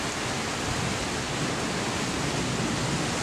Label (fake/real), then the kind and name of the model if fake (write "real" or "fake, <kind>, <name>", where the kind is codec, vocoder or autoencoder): real